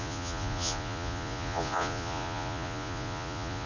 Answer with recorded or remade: remade